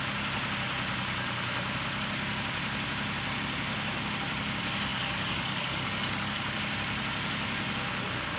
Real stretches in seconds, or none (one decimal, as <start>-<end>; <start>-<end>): 0.0-4.9; 6.6-8.4